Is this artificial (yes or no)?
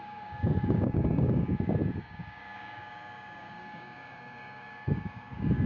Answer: yes